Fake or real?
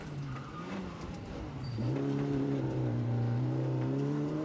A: fake